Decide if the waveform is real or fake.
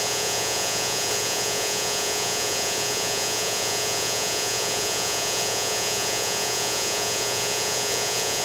fake